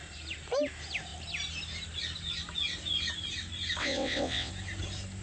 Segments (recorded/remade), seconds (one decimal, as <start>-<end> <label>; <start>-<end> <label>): 0.0-3.8 recorded; 3.8-4.5 remade; 4.5-5.2 recorded